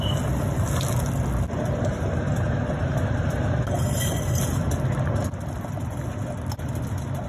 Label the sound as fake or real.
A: real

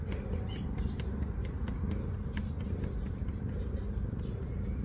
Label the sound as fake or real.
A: real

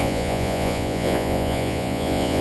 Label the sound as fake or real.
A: fake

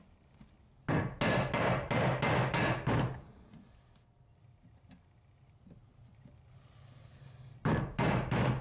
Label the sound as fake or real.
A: real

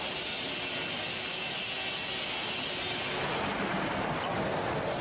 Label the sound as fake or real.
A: real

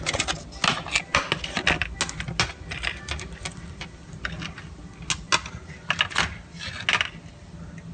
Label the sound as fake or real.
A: real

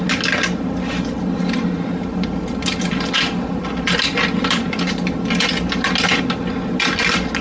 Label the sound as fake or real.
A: real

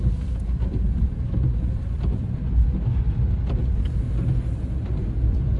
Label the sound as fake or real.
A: real